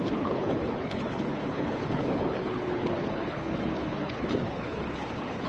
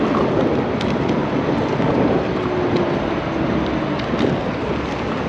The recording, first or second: second